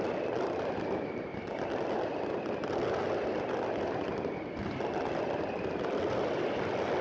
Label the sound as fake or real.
real